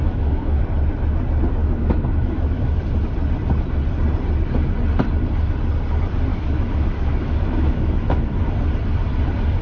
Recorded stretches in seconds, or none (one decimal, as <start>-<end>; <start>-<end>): 0.6-1.6; 2.8-6.3; 8.4-9.6

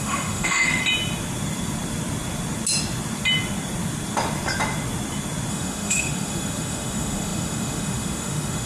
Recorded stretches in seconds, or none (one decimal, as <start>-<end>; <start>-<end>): 0.8-5.5

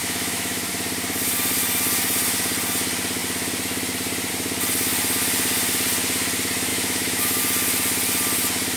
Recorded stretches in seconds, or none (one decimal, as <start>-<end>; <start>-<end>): 0.7-6.7; 7.4-8.8

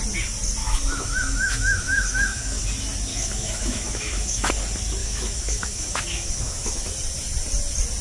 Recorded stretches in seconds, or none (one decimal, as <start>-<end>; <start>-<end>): 0.0-0.6; 2.6-3.1; 4.5-5.0; 6.9-8.0

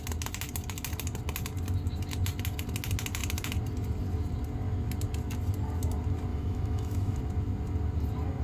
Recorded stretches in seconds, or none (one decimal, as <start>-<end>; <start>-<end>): 0.0-6.3; 7.2-8.4

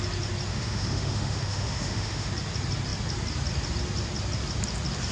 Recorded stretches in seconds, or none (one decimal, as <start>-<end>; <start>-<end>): 0.0-0.5; 2.3-5.1